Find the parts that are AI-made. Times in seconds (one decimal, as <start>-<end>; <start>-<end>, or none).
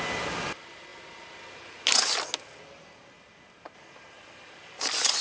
none